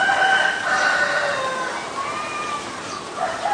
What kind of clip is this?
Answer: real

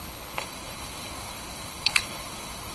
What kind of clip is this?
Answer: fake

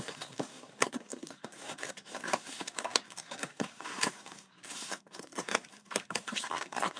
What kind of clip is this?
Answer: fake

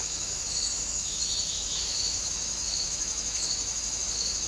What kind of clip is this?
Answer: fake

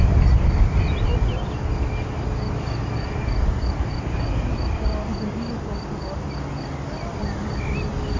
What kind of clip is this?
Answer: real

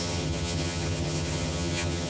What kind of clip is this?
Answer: fake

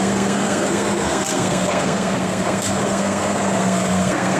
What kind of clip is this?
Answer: fake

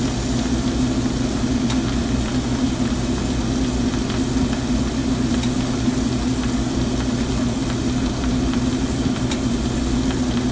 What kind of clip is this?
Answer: real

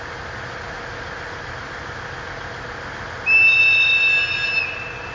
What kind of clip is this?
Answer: real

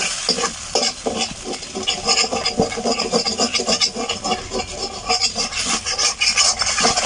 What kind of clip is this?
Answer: real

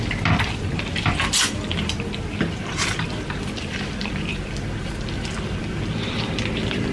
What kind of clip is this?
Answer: real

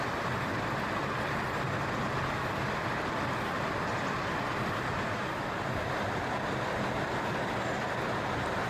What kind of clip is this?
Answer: real